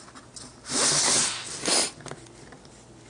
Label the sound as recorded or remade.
recorded